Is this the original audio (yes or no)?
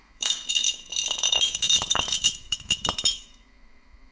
no